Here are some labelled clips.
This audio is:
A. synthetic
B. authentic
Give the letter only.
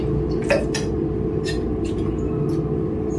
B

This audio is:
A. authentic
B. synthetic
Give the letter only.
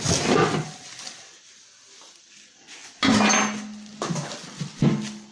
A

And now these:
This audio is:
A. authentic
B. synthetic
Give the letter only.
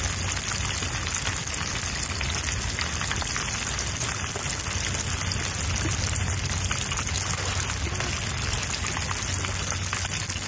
A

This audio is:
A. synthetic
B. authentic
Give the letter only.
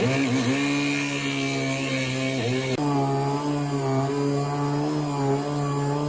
B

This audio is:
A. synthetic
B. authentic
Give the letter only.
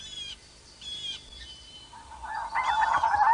B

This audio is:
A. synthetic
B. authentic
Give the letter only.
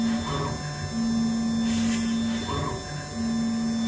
B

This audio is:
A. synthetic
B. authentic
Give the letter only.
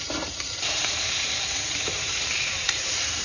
A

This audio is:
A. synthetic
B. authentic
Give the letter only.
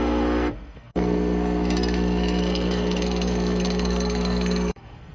A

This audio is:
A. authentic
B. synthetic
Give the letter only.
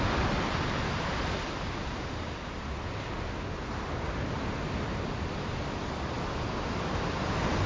A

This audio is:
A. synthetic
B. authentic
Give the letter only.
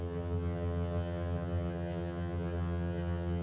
A